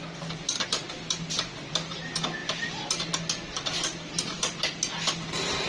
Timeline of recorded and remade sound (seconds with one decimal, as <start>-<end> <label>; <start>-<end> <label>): 0.0-5.7 recorded